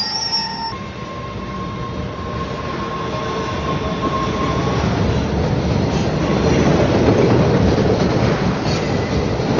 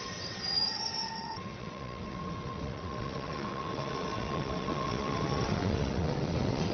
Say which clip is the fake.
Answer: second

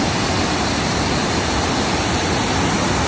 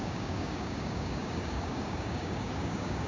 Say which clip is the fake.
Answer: second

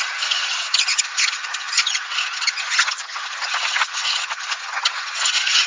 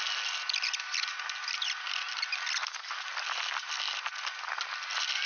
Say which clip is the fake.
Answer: first